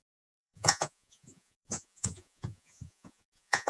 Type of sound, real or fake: fake